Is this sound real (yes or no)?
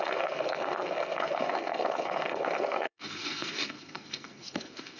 no